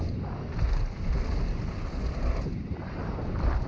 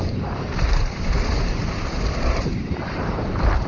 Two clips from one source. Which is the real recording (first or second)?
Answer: first